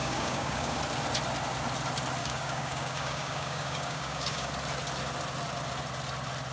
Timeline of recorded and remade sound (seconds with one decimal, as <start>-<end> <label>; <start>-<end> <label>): 0.0-0.8 remade; 0.8-2.2 recorded; 2.2-4.5 remade; 4.5-6.5 recorded